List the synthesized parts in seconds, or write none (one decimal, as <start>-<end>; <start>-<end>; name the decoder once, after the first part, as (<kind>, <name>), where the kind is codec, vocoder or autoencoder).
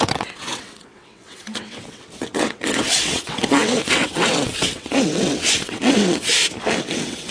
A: 0.0-6.3 (vocoder, WaveNeXt); 6.8-7.3